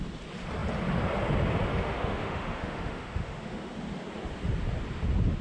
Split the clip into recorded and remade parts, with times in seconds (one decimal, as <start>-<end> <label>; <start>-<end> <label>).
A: 0.0-1.7 recorded; 1.7-3.7 remade; 3.7-5.4 recorded

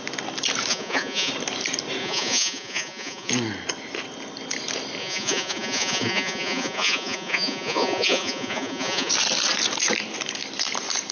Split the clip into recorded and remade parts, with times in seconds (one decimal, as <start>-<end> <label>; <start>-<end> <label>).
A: 0.0-0.7 recorded; 0.7-1.3 remade; 1.3-2.0 recorded; 2.0-3.3 remade; 3.3-5.0 recorded; 5.0-9.1 remade; 9.1-11.1 recorded

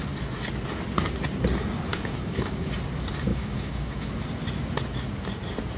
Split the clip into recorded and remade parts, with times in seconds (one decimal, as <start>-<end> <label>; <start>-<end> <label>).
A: 0.0-1.9 recorded; 1.9-2.7 remade; 2.7-3.3 recorded; 3.3-4.1 remade; 4.1-5.8 recorded

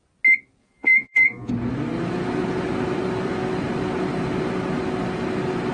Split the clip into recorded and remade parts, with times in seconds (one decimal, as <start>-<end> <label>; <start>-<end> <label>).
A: 0.0-0.6 recorded; 0.6-1.5 remade; 1.5-5.7 recorded